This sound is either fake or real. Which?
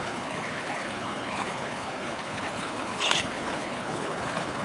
fake